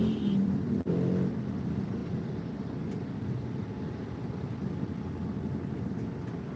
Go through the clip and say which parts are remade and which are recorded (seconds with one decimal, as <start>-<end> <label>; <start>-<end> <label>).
0.0-6.6 recorded